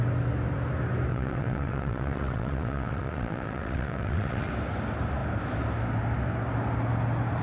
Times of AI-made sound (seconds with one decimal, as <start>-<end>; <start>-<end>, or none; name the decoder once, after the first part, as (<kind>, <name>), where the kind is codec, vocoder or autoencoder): 1.1-4.5 (vocoder, WaveNeXt)

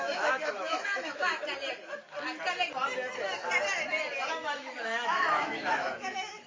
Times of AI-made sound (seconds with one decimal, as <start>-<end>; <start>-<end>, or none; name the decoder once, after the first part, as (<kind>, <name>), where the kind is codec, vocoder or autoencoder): 0.0-1.4 (autoencoder, DAC-VAE); 4.3-6.5